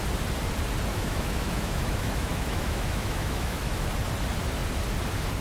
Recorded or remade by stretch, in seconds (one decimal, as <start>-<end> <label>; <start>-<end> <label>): 0.0-0.9 recorded; 0.9-3.9 remade; 3.9-5.4 recorded